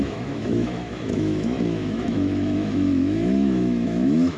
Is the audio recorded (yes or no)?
no